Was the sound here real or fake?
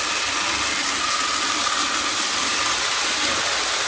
real